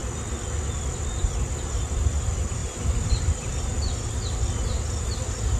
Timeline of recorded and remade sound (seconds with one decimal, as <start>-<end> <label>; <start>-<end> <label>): 0.0-2.6 recorded; 2.6-3.1 remade; 3.1-5.6 recorded